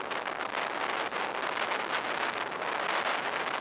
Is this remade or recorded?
recorded